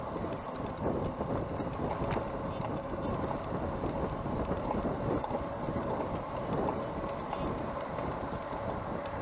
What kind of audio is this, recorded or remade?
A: recorded